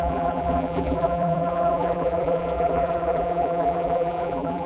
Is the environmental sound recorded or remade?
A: remade